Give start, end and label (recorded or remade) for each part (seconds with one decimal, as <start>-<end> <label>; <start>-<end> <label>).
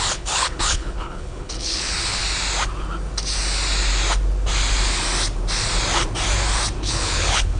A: 0.0-2.2 remade; 2.2-6.8 recorded; 6.8-7.6 remade